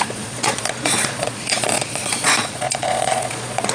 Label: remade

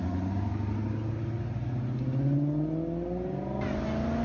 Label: recorded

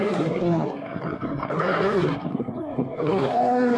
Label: remade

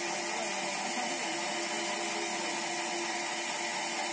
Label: recorded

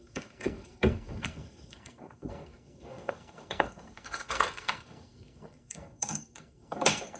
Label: remade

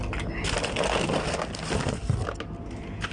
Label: recorded